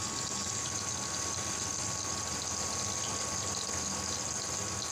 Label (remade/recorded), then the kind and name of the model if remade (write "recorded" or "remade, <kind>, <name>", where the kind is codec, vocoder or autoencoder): recorded